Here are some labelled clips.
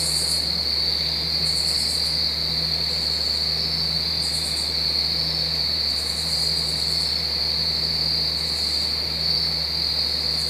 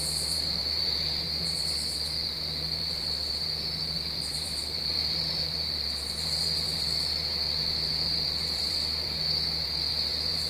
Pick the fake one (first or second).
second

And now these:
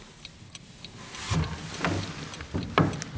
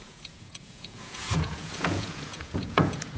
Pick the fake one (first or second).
second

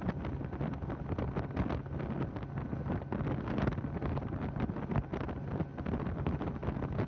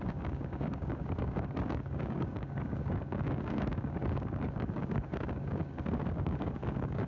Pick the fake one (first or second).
second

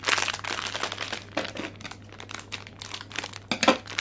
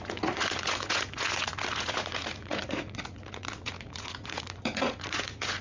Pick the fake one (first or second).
second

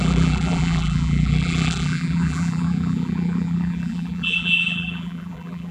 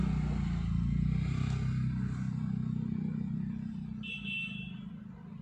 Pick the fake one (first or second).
first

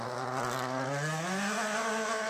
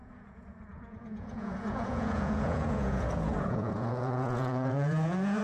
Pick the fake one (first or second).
second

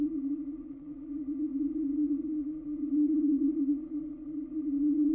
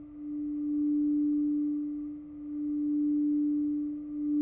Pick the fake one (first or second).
first